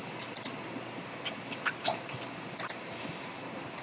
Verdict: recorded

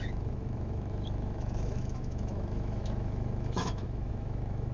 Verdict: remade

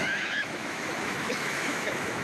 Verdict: remade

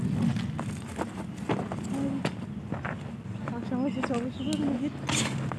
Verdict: recorded